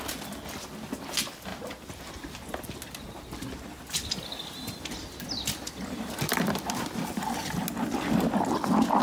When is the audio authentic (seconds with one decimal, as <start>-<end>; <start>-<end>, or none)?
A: 0.0-9.0